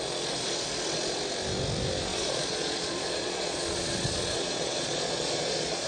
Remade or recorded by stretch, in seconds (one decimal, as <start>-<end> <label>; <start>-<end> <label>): 0.0-2.1 recorded; 2.1-5.9 remade